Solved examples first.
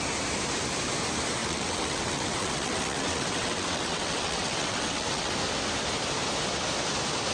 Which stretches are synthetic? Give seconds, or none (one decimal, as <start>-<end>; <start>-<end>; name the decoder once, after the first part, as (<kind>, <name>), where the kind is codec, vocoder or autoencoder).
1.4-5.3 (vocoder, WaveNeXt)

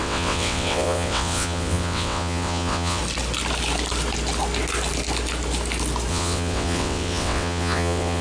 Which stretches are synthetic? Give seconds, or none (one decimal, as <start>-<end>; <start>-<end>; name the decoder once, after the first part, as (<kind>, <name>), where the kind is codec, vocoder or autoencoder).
0.0-3.0 (vocoder, WaveNeXt); 6.1-8.2

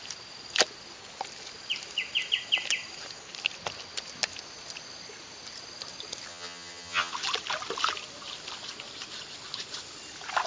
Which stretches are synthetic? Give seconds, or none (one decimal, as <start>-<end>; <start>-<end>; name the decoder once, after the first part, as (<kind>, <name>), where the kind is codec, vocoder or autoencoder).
6.3-7.1 (vocoder, HiFi-GAN)